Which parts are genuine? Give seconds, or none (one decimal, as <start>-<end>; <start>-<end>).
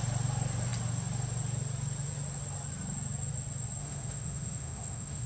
0.0-3.8